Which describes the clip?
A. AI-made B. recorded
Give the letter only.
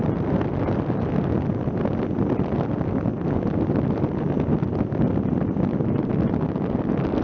B